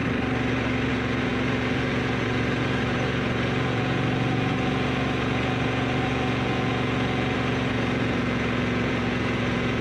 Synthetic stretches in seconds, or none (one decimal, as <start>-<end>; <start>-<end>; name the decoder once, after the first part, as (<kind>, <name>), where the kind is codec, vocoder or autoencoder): 0.9-9.8 (vocoder, Vocos)